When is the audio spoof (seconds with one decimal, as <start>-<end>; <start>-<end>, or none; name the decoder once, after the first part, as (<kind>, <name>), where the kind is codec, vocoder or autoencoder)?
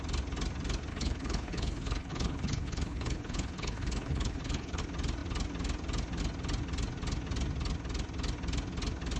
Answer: 0.9-4.8 (codec, HILCodec)